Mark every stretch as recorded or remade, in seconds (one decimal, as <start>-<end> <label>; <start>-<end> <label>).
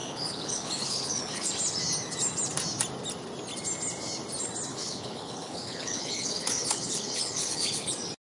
0.0-1.5 remade; 1.5-4.7 recorded; 4.7-7.9 remade; 7.9-8.3 recorded